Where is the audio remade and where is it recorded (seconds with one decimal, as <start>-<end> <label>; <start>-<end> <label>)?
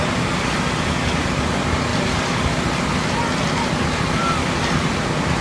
0.0-5.4 recorded